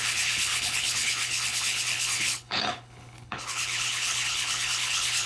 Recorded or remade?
remade